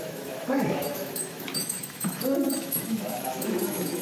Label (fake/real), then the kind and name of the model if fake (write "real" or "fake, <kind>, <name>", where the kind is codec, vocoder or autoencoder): fake, autoencoder, DAC-VAE